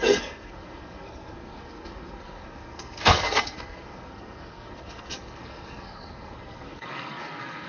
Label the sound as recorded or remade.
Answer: remade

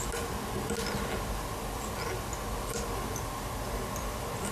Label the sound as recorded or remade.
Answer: recorded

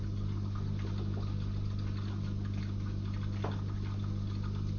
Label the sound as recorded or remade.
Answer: recorded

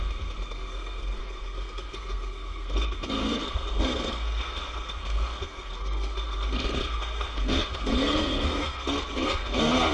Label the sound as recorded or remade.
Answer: remade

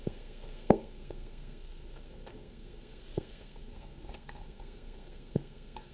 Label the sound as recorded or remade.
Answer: remade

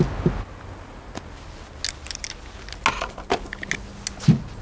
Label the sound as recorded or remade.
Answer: recorded